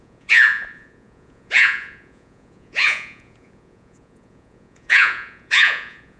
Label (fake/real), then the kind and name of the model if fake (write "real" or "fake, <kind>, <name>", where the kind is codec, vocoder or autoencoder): fake, vocoder, Vocos